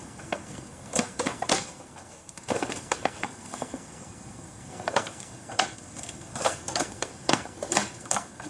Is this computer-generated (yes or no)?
yes